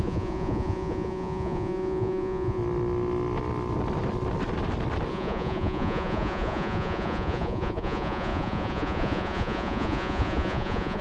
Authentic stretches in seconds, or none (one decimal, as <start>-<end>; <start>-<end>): 2.6-5.1